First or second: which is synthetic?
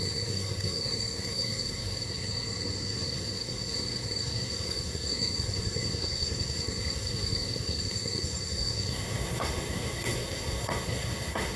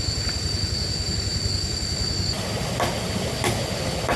first